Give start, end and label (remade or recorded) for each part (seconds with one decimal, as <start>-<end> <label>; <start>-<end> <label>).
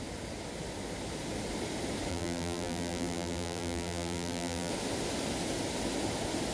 0.0-2.1 recorded; 2.1-4.7 remade; 4.7-6.5 recorded